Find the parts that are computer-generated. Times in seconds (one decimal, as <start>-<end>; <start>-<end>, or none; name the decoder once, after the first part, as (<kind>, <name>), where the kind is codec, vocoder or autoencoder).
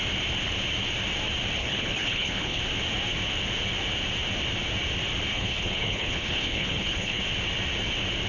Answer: 1.6-2.6 (codec, HILCodec); 5.3-7.2